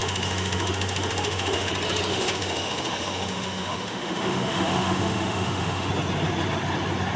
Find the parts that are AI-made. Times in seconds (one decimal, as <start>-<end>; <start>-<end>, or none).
0.0-1.7; 2.1-5.9